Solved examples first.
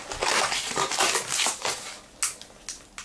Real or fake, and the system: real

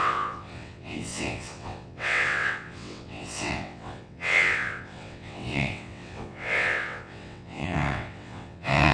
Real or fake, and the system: fake, vocoder, WaveNeXt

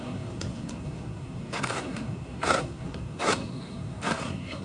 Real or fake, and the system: fake, codec, SNAC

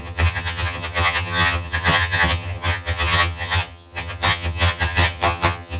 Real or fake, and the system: fake, vocoder, HiFi-GAN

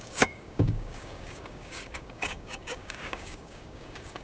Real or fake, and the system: fake, codec, DAC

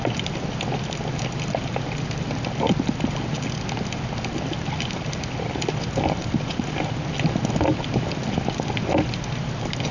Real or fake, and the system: real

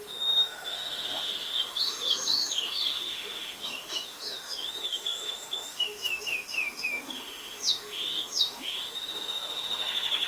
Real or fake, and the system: fake, autoencoder, DAC-VAE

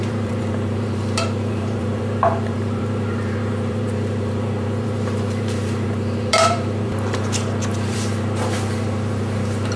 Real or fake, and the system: fake, vocoder, BigVGAN v2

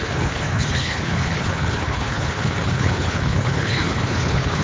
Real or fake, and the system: fake, codec, HILCodec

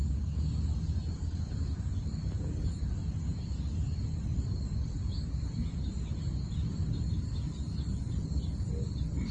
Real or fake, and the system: real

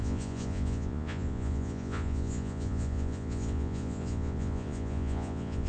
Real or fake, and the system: fake, vocoder, Vocos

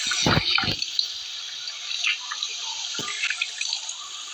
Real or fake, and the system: real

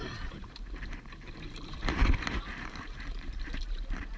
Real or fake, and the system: fake, vocoder, BigVGAN v2